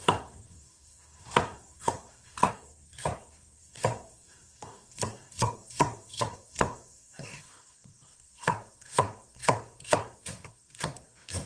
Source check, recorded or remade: remade